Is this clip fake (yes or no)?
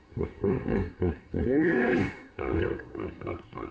yes